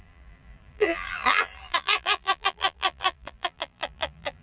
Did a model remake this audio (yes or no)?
yes